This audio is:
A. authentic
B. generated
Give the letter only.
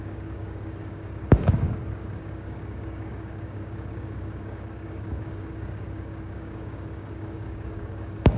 B